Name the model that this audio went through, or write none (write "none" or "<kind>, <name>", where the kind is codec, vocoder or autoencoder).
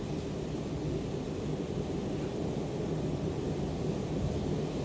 none